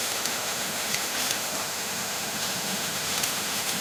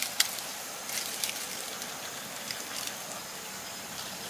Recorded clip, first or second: second